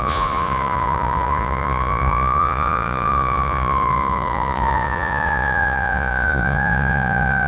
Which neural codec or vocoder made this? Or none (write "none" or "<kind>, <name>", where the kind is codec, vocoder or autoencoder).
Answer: vocoder, Vocos